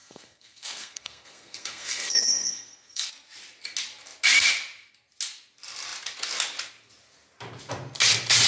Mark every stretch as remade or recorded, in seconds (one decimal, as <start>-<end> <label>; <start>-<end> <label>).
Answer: 0.0-3.1 remade; 3.1-8.5 recorded